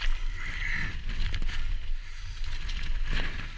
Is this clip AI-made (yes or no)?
no